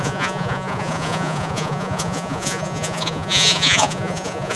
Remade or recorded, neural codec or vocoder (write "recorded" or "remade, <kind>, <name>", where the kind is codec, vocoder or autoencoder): remade, vocoder, Vocos